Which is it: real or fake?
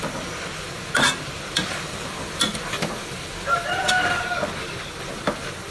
real